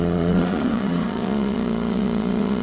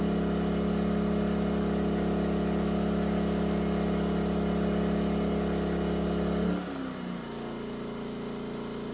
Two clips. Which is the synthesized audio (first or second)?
first